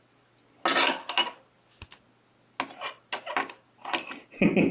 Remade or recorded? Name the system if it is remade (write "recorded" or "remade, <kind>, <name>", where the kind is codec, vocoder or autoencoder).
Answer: recorded